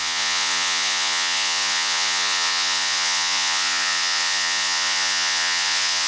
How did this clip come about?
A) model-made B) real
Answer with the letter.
A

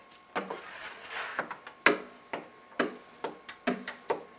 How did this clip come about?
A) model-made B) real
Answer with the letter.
B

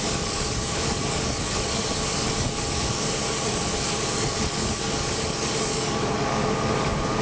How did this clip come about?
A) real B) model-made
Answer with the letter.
B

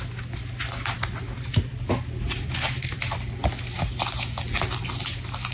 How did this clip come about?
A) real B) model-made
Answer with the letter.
A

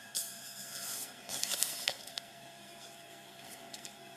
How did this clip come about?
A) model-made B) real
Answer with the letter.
A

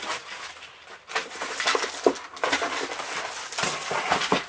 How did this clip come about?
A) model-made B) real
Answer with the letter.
B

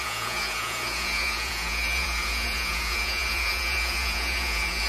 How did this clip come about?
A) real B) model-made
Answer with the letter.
B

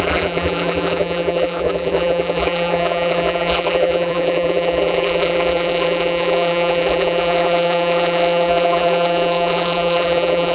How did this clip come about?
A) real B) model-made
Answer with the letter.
B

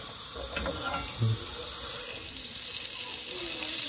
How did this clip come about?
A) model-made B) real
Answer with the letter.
B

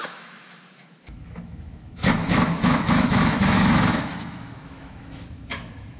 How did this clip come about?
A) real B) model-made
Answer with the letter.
B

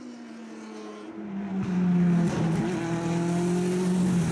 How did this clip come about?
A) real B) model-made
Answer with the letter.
A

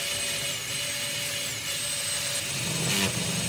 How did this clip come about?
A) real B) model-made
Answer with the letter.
A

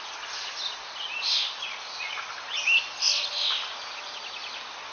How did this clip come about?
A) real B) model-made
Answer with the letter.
A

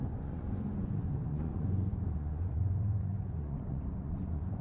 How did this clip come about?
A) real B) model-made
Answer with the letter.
B